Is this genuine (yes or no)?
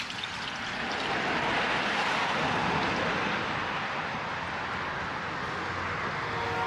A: yes